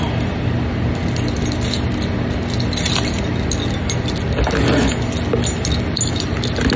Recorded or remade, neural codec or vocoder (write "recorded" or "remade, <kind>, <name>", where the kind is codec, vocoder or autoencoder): recorded